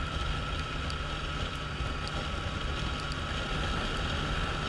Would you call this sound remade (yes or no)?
no